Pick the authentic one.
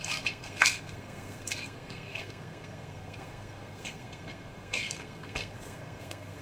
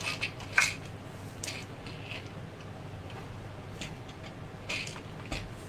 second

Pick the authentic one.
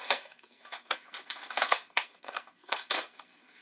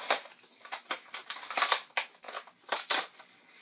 second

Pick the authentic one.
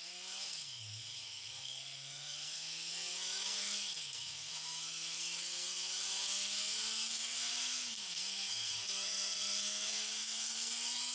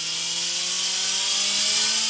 second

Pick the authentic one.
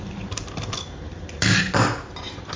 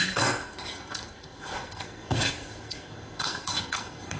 first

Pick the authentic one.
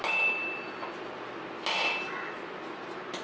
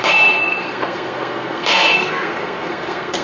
first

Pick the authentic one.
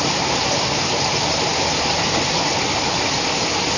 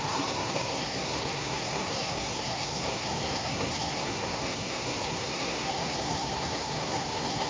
first